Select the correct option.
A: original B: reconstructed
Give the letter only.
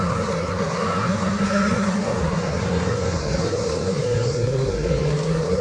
B